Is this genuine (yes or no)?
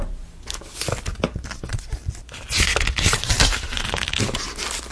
yes